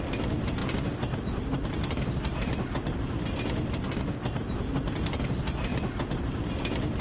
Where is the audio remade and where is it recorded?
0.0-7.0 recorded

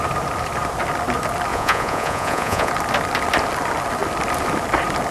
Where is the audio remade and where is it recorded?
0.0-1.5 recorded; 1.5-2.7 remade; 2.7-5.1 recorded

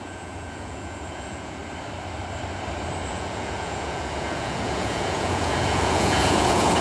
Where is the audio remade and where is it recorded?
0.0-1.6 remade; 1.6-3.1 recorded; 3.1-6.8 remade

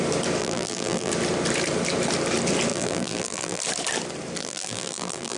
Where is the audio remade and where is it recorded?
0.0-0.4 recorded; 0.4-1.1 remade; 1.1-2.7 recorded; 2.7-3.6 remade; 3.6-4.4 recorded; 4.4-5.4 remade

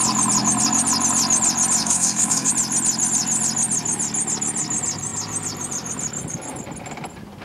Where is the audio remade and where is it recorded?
0.0-1.8 recorded; 1.8-2.5 remade; 2.5-7.4 recorded

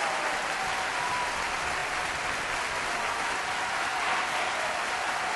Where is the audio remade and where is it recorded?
0.0-5.4 recorded

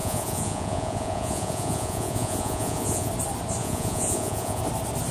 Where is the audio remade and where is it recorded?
0.0-3.1 remade; 3.1-3.6 recorded; 3.6-4.6 remade; 4.6-5.1 recorded

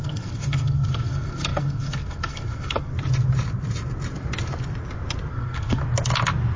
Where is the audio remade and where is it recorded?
0.0-2.9 remade; 2.9-5.3 recorded; 5.3-5.8 remade; 5.8-6.6 recorded